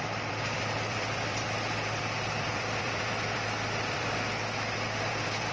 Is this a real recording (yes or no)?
no